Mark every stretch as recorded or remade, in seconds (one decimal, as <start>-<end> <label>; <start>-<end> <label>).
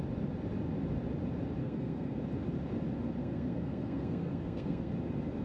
0.0-1.6 recorded; 1.6-2.2 remade; 2.2-3.2 recorded; 3.2-4.9 remade; 4.9-5.4 recorded